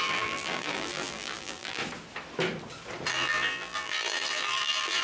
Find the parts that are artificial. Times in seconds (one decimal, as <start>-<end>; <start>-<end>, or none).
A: 0.0-1.8; 3.1-5.0